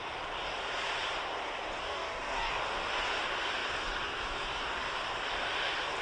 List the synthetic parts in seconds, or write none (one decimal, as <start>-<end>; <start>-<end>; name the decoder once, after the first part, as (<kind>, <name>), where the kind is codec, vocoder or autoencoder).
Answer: 1.8-2.5 (codec, DAC)